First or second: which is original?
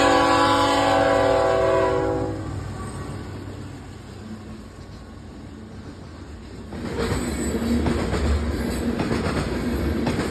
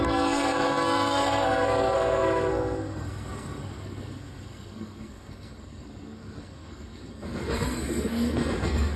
first